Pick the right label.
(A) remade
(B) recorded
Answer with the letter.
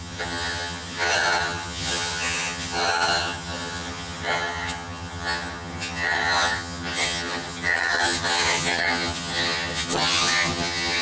A